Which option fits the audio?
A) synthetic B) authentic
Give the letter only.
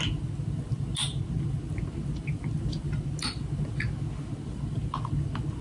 B